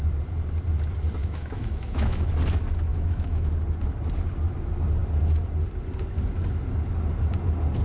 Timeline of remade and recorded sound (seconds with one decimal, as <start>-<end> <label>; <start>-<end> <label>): 0.0-1.2 recorded; 1.2-2.3 remade; 2.3-2.9 recorded; 2.9-3.5 remade; 3.5-7.8 recorded